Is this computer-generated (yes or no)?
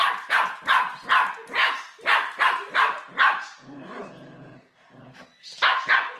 yes